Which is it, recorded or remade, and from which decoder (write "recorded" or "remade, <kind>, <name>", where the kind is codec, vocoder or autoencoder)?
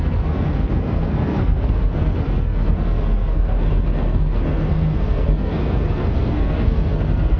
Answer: remade, codec, SNAC